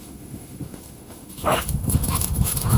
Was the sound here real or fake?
fake